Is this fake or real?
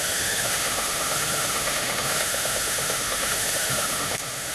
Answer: fake